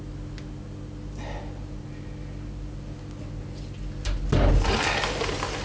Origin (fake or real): real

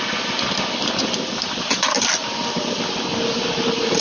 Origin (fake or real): real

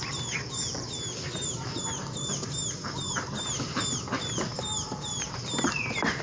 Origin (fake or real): real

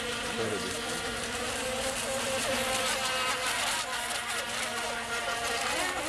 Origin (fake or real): real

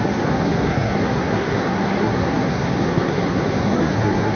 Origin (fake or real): fake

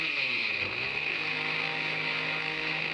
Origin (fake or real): fake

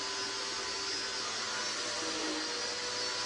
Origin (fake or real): real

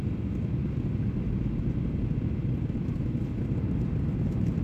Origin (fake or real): real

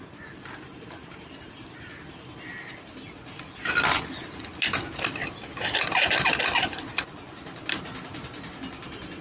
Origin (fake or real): real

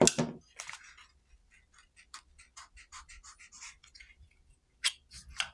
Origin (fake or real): real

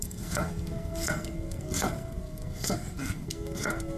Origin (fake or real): fake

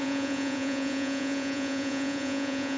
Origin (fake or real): fake